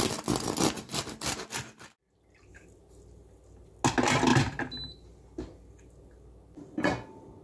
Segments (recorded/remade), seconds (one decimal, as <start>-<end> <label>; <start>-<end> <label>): 0.0-7.4 recorded